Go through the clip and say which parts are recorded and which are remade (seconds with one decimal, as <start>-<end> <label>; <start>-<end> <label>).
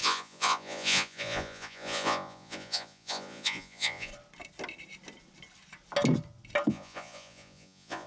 0.0-4.1 remade; 4.1-6.7 recorded; 6.7-8.1 remade